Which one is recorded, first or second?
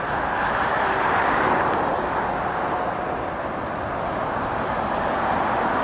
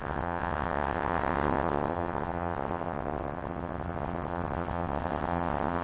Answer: first